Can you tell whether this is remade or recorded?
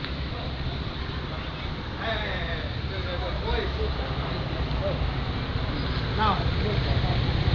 recorded